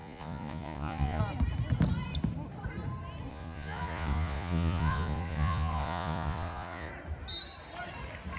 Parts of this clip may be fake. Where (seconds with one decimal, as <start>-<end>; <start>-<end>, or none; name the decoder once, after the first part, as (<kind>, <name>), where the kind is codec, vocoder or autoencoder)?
0.0-1.2 (vocoder, Vocos); 3.3-6.9